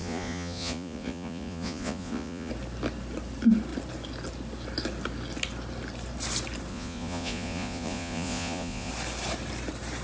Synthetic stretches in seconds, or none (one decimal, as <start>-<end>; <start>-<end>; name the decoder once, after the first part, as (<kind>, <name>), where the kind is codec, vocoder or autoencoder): 0.0-2.5 (vocoder, Vocos); 6.7-8.9